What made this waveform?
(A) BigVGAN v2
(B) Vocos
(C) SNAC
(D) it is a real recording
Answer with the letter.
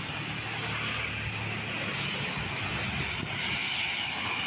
D